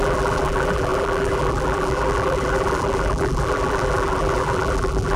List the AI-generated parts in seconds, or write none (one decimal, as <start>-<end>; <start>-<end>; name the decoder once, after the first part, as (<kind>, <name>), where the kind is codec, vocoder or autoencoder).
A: 0.0-5.2 (vocoder, BigVGAN v2)